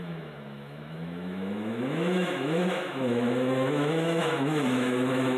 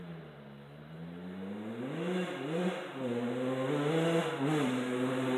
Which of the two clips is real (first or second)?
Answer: second